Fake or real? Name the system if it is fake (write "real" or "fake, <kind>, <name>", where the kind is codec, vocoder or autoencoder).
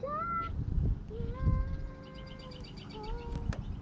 real